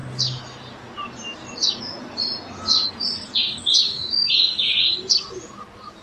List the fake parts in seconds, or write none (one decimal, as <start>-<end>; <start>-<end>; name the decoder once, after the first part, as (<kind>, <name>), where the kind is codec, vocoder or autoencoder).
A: 3.7-4.7 (autoencoder, DAC-VAE)